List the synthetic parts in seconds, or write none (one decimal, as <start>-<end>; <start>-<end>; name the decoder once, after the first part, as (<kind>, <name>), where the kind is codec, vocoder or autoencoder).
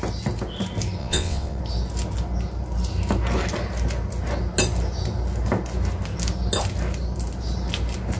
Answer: 1.0-1.6 (vocoder, WaveNeXt)